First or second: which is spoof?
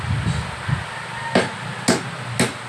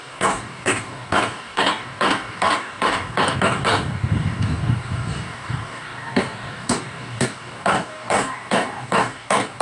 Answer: second